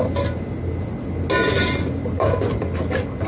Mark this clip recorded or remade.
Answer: recorded